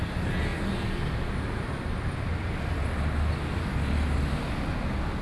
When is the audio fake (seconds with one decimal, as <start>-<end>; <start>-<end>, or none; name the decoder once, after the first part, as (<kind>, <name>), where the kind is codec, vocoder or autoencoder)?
none